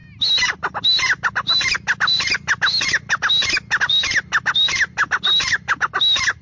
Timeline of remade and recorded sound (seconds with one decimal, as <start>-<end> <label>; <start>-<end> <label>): 0.0-6.4 recorded

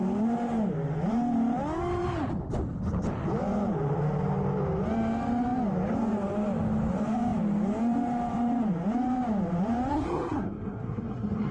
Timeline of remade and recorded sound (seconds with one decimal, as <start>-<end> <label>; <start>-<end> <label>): 0.0-9.9 recorded; 9.9-11.5 remade

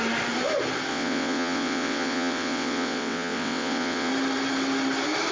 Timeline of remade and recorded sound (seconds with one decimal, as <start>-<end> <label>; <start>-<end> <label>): 0.0-0.9 recorded; 0.9-4.1 remade; 4.1-5.3 recorded

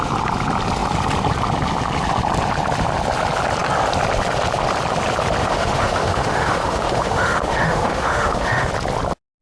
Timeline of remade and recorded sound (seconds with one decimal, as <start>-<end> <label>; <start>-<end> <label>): 0.0-5.4 recorded; 5.4-8.7 remade; 8.7-9.4 recorded